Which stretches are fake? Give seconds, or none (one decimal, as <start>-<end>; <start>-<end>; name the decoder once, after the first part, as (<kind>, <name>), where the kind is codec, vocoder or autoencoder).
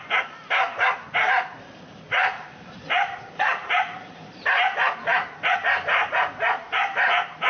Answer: none